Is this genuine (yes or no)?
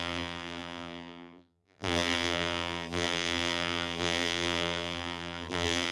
no